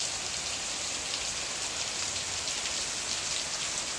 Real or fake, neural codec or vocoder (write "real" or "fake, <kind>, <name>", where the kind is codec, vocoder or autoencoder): real